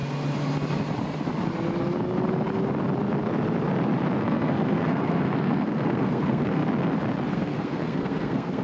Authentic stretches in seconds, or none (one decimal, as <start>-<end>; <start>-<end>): 0.0-4.2; 6.6-7.3